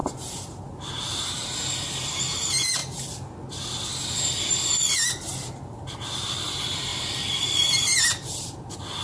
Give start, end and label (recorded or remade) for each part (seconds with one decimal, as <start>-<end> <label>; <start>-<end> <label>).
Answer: 0.0-2.2 remade; 2.2-9.0 recorded